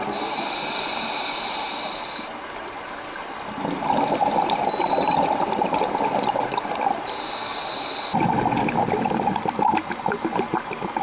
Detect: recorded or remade recorded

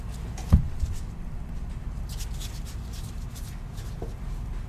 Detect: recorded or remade recorded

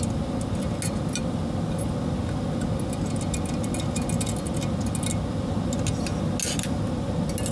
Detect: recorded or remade recorded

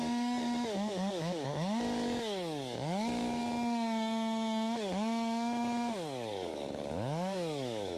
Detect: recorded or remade remade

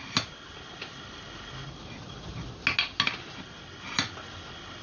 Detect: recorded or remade recorded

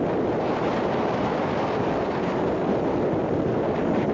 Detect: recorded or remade recorded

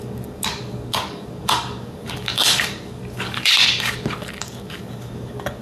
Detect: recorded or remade remade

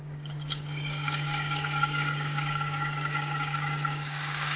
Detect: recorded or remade remade